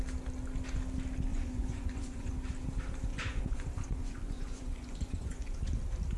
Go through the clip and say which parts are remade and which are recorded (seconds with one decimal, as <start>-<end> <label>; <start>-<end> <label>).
0.0-1.3 recorded; 1.3-2.3 remade; 2.3-3.1 recorded; 3.1-5.8 remade; 5.8-6.2 recorded